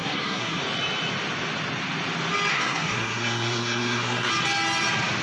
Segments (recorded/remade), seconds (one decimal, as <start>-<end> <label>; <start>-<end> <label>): 0.0-0.6 remade; 0.6-2.5 recorded; 2.5-4.3 remade; 4.3-5.2 recorded